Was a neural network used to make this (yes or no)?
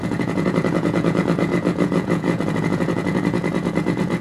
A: yes